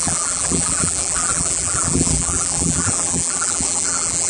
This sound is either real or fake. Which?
fake